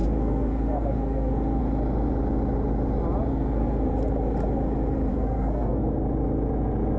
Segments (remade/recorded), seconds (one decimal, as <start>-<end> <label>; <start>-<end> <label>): 0.0-1.6 remade; 1.6-3.3 recorded; 3.3-3.9 remade; 3.9-5.1 recorded; 5.1-5.8 remade; 5.8-7.0 recorded